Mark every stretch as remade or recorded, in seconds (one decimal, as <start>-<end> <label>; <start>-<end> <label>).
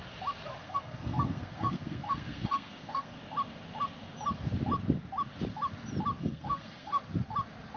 0.0-0.6 recorded; 0.6-3.2 remade; 3.2-6.2 recorded; 6.2-7.0 remade; 7.0-7.8 recorded